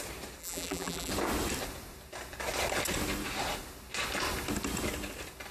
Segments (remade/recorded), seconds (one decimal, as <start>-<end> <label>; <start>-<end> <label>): 0.0-0.4 recorded; 0.4-1.1 remade; 1.1-5.5 recorded